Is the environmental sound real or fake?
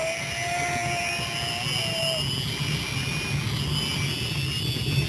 real